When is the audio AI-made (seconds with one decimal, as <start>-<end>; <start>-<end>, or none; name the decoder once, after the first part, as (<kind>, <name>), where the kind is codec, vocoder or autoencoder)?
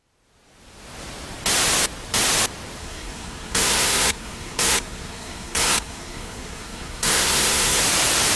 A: 2.8-7.8 (codec, SNAC)